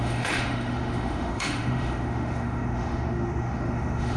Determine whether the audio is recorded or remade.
remade